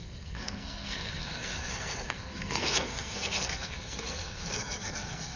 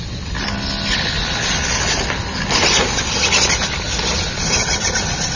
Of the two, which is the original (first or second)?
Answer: second